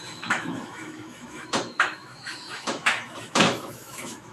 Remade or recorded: remade